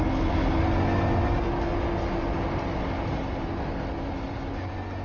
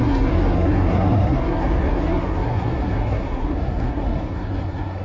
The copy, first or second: second